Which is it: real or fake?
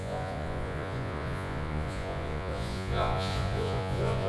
fake